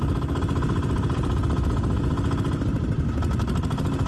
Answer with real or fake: real